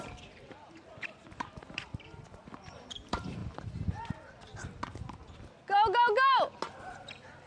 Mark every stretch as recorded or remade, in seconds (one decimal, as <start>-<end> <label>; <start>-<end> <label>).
0.0-4.5 remade; 4.5-6.9 recorded; 6.9-7.5 remade